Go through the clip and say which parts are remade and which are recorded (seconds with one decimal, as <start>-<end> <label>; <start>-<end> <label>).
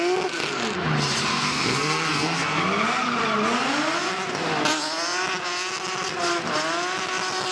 0.0-1.3 recorded; 1.3-2.6 remade; 2.6-7.5 recorded